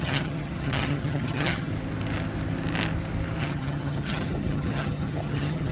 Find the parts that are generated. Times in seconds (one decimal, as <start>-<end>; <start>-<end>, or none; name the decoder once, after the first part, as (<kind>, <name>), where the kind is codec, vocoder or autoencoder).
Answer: 0.0-1.7 (vocoder, HiFi-GAN); 3.4-5.7